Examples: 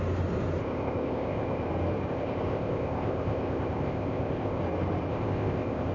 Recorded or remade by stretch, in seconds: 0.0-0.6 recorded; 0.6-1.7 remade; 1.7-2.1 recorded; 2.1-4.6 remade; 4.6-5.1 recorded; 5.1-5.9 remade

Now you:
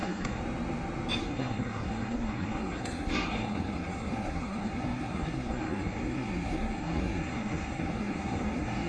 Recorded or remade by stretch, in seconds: 0.0-0.4 remade; 0.4-1.2 recorded; 1.2-8.9 remade

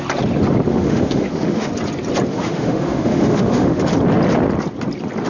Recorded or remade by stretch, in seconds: 0.0-0.7 recorded; 0.7-1.7 remade; 1.7-2.3 recorded; 2.3-3.8 remade; 3.8-5.3 recorded

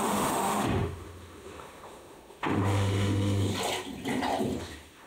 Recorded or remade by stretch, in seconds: 0.0-3.5 remade; 3.5-4.6 recorded; 4.6-5.1 remade

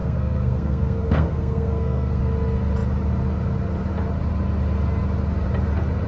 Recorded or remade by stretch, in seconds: 0.0-2.2 remade; 2.2-6.1 recorded

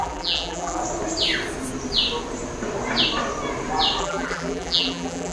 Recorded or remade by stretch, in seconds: 0.0-0.8 remade; 0.8-4.0 recorded; 4.0-5.3 remade